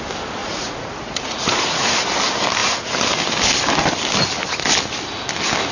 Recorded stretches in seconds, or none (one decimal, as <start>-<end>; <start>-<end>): 0.0-0.4; 1.9-5.7